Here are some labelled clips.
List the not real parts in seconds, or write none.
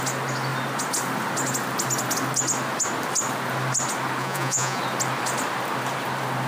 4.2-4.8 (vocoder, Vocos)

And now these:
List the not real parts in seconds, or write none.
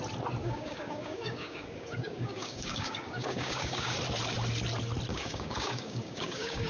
0.4-4.0 (codec, DAC); 5.1-6.7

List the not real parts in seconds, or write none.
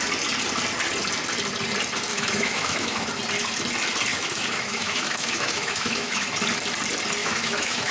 2.1-3.1 (autoencoder, DAC-VAE); 4.1-6.3; 7.2-7.9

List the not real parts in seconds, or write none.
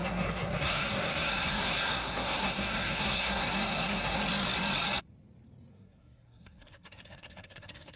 0.0-4.2 (codec, SNAC); 5.7-8.0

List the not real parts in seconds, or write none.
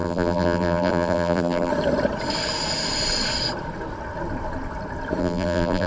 0.0-1.7 (vocoder, BigVGAN v2); 5.2-5.9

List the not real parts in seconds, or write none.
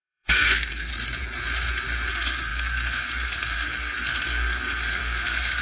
0.0-0.9 (codec, SNAC); 2.1-5.6